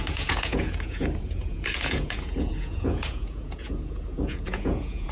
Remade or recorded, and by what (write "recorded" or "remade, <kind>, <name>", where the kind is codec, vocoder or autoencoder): remade, vocoder, Vocos